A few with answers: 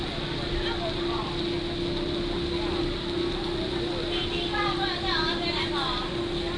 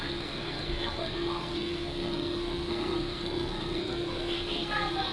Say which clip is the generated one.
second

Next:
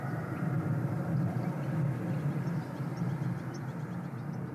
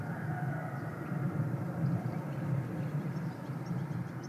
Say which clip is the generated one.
second